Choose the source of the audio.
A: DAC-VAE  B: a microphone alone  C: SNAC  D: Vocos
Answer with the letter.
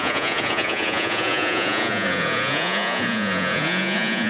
D